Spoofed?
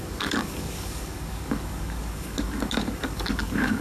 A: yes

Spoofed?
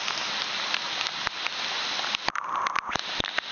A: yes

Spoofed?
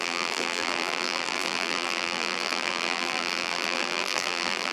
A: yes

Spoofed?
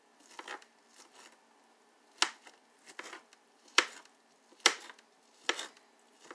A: no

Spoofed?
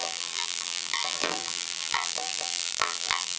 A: yes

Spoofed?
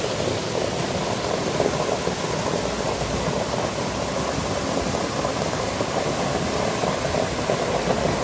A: no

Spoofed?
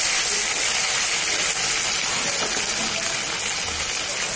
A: no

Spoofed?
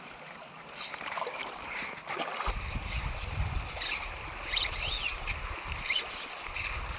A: no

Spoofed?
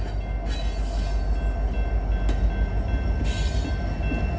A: no